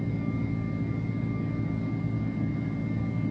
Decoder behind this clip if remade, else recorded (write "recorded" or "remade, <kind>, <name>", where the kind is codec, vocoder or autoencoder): remade, codec, DAC